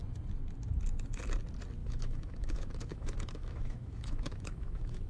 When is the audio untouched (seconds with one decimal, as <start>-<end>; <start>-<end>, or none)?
0.0-1.8

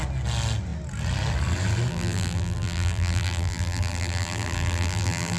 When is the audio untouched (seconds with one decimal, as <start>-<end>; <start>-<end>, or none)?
0.0-1.9

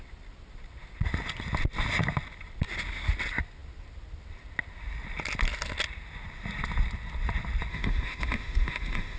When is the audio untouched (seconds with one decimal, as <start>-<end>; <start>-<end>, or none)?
0.0-7.7

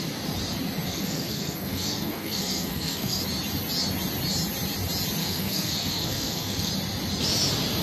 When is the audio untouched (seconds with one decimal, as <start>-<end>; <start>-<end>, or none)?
0.0-0.9; 3.2-5.2; 6.7-7.8

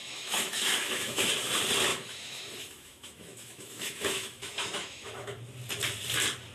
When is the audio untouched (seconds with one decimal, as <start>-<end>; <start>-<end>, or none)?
1.3-1.9; 5.4-6.5

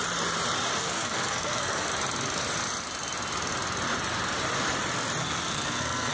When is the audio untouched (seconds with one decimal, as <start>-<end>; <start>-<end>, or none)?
0.0-0.8; 1.9-5.2

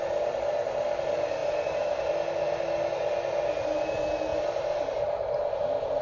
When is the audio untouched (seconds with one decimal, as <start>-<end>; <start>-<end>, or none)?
0.0-6.0

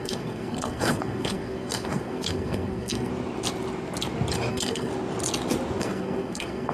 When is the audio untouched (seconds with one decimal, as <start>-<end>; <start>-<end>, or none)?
3.1-4.5; 4.9-5.8